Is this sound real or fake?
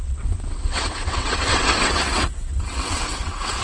fake